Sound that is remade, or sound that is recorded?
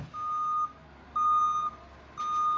recorded